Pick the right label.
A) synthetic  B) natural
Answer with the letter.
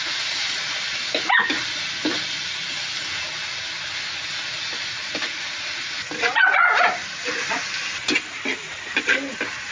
B